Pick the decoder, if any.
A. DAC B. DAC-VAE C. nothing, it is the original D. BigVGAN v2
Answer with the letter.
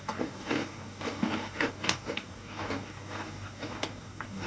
A